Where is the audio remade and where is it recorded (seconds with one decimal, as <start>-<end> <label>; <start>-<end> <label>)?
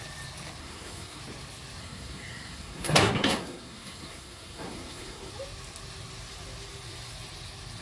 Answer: 0.0-0.6 recorded; 0.6-1.2 remade; 1.2-1.8 recorded; 1.8-5.3 remade; 5.3-7.8 recorded